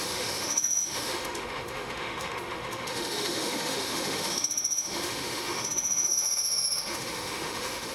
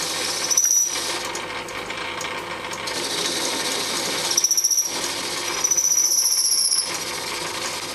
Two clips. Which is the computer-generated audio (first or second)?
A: first